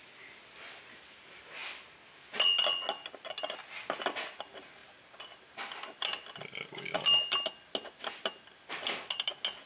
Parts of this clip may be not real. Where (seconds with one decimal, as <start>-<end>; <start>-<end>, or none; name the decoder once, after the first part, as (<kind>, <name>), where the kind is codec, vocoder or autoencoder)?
none